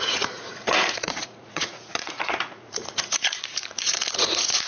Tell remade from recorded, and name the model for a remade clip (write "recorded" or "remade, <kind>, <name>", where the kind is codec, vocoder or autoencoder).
remade, vocoder, Vocos